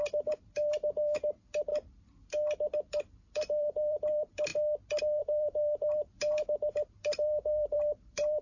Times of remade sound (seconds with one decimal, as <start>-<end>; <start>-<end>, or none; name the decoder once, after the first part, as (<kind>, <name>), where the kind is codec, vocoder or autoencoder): 0.0-1.7 (vocoder, BigVGAN v2); 2.9-4.5; 5.0-8.4